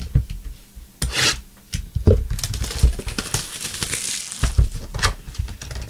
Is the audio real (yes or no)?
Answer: yes